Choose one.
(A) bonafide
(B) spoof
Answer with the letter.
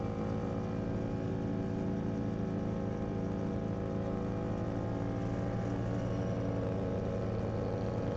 A